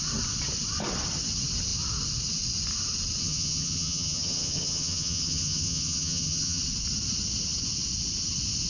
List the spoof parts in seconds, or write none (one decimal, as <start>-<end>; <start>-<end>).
3.2-6.6